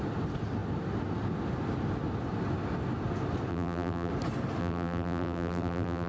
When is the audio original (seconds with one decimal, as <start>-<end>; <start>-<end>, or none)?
0.0-3.5; 4.1-4.6